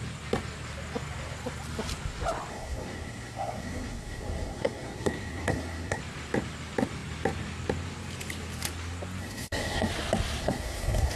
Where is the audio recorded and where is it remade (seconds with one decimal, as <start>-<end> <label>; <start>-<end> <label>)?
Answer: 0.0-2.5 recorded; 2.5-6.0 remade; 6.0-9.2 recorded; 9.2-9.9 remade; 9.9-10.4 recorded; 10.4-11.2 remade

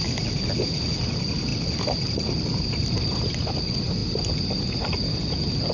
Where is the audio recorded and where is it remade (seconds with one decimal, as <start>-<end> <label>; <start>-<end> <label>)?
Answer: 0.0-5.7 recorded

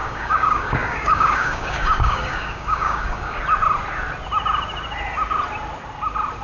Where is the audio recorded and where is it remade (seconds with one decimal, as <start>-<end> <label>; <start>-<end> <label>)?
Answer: 0.0-3.4 remade; 3.4-6.4 recorded